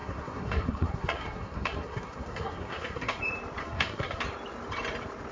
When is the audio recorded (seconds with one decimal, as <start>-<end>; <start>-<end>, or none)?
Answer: 3.2-3.6; 4.2-5.3